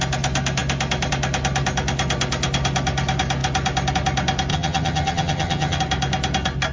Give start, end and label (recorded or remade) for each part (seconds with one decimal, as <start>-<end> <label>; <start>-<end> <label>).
0.0-4.5 recorded; 4.5-5.8 remade; 5.8-6.7 recorded